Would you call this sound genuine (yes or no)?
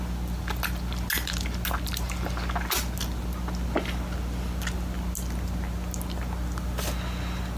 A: yes